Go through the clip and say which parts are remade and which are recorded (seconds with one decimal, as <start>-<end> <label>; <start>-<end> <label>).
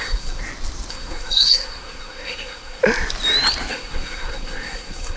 0.0-0.4 remade; 0.4-0.9 recorded; 0.9-2.8 remade; 2.8-3.7 recorded; 3.7-5.2 remade